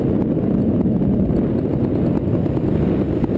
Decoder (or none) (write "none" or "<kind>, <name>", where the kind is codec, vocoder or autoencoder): none